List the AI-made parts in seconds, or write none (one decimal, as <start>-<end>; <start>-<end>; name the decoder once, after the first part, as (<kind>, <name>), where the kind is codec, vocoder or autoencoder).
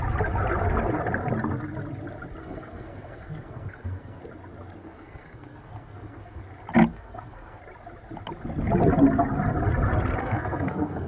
2.4-4.2 (codec, SNAC); 4.8-6.4; 6.9-7.6; 10.2-11.1